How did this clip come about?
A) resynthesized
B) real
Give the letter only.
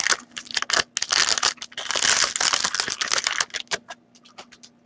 B